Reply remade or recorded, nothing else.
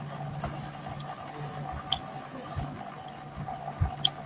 recorded